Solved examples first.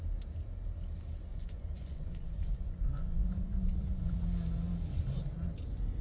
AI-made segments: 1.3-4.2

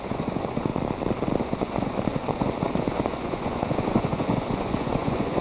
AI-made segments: 0.0-0.7; 1.4-5.4

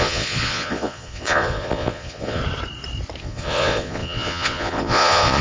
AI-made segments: 0.0-2.4; 3.2-5.4

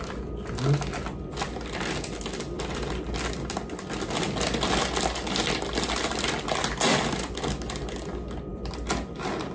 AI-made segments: none

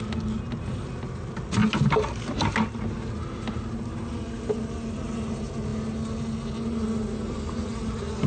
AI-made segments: none

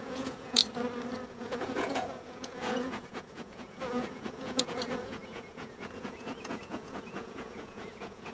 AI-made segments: 0.0-0.6; 1.3-8.3

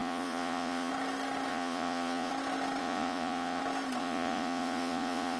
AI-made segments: 0.0-0.9; 1.5-2.3; 2.8-3.6; 4.0-5.4

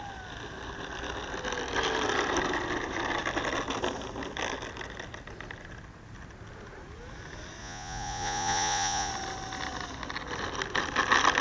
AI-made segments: 7.6-9.1